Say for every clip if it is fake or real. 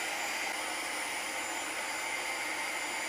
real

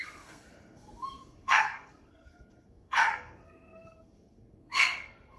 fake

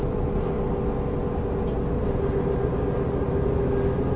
real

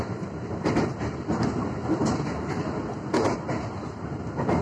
real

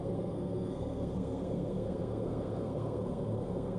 fake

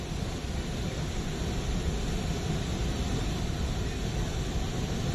real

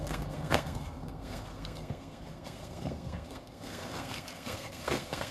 fake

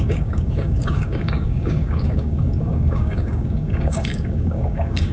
fake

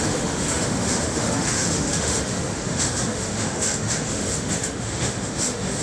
fake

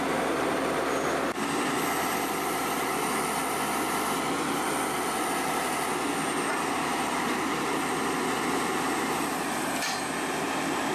real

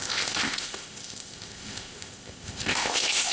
fake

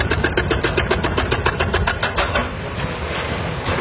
real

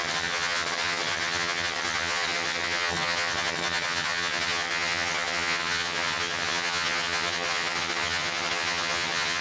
fake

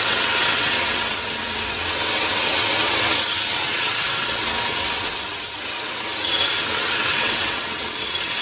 fake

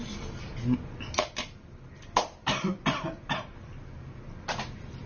real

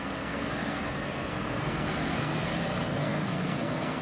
fake